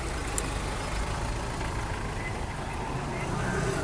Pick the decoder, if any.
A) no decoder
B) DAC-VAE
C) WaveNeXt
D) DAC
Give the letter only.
A